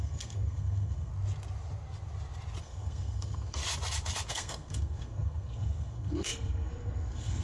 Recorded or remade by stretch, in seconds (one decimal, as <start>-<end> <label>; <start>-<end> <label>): 0.0-1.1 remade; 1.1-2.6 recorded; 2.6-3.6 remade; 3.6-4.3 recorded; 4.3-7.4 remade